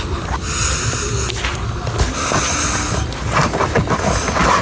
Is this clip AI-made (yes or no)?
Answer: no